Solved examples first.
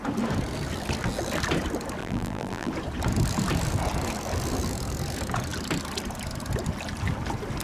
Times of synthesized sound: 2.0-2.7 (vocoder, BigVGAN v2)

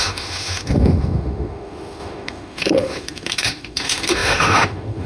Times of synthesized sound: 0.0-5.1 (autoencoder, DAC-VAE)

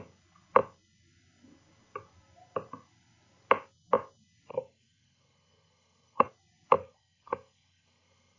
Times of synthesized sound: 4.5-6.3 (codec, SNAC); 6.8-8.4

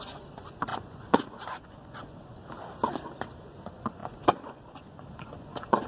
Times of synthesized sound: 0.0-2.4 (vocoder, Vocos); 3.4-5.9

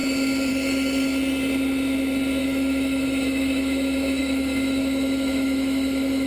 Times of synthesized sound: 2.4-6.3 (autoencoder, DAC-VAE)

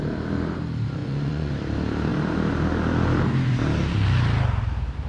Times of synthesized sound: 1.0-1.5 (vocoder, Vocos)